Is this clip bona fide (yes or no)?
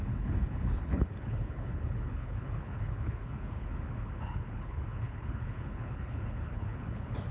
no